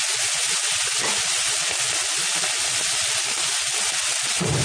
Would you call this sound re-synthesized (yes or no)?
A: no